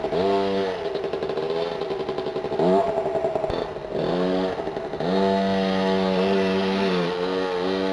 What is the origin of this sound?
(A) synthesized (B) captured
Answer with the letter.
B